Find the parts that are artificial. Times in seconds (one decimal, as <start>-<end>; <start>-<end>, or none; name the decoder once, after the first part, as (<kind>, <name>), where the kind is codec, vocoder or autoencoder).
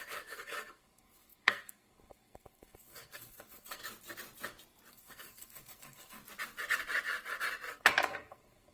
0.0-3.8 (codec, SNAC); 4.9-6.2; 7.7-8.7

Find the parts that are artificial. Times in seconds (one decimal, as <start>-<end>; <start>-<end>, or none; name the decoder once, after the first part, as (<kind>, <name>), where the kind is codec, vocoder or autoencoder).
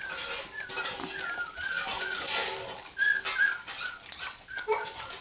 1.9-2.5 (vocoder, Vocos)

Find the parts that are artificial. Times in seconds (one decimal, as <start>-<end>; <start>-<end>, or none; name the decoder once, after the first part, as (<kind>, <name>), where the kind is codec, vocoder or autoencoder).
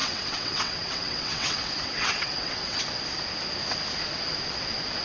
0.0-2.8 (vocoder, WaveNeXt)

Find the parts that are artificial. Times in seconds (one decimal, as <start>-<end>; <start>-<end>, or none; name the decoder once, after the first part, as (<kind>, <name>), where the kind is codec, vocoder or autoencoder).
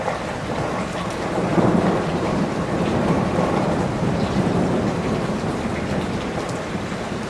1.5-5.5 (vocoder, BigVGAN v2)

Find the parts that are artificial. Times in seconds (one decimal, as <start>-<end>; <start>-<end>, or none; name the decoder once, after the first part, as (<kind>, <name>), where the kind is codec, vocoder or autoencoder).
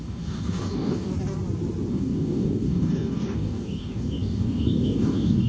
0.0-1.1 (codec, DAC); 1.9-5.5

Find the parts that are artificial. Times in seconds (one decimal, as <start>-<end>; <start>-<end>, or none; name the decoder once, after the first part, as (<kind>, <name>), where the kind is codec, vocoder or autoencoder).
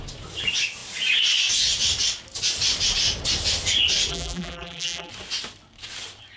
4.1-5.1 (vocoder, BigVGAN v2)